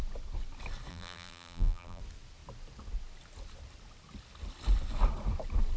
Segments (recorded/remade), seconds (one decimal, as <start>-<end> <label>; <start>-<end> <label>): 0.0-0.9 recorded; 0.9-2.0 remade; 2.0-5.8 recorded